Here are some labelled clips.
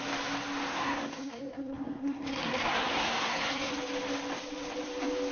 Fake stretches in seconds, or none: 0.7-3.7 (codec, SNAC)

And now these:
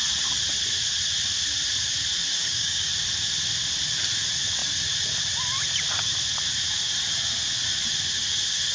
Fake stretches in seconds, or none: 2.4-2.9 (codec, DAC)

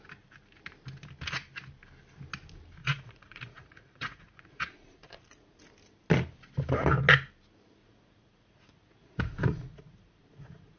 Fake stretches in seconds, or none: 2.8-5.6 (vocoder, Vocos); 7.8-10.8

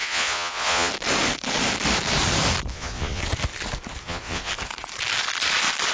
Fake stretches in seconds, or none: 0.0-0.9 (vocoder, Vocos); 2.7-3.2; 4.0-4.5

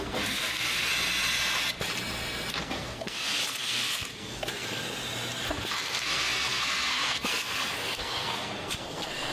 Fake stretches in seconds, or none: 0.0-0.9 (codec, SNAC); 2.5-4.8; 5.5-9.3